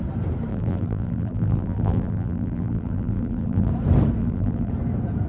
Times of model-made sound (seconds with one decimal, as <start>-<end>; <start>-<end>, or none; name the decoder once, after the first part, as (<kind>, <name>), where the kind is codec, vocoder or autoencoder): 0.5-3.7 (vocoder, BigVGAN v2); 4.2-4.7